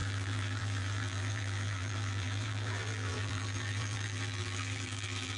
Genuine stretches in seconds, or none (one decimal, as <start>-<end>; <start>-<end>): none